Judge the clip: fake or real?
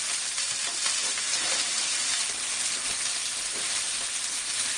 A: fake